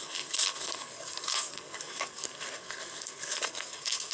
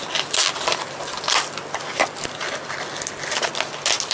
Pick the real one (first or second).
second